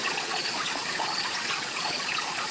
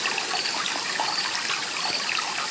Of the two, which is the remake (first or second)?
first